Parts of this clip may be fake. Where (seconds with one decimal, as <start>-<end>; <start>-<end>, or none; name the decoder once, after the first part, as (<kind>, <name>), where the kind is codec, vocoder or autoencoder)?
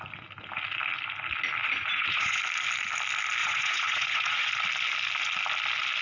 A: 1.6-2.4 (vocoder, Vocos); 3.4-4.5